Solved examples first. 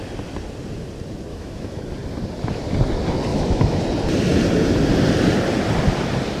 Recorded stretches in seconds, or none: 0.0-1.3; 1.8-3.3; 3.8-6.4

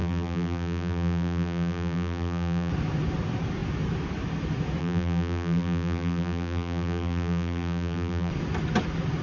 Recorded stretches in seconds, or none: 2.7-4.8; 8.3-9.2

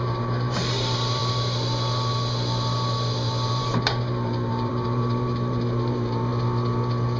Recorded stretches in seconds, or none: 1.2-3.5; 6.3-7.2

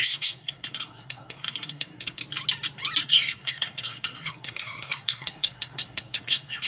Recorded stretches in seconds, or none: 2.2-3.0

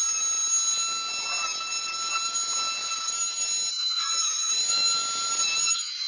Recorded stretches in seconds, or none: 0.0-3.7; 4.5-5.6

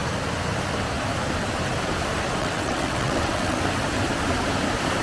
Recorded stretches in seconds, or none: 0.0-2.4; 3.6-5.0